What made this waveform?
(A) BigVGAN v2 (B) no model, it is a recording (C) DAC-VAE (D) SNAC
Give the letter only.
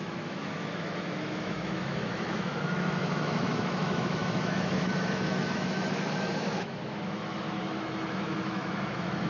C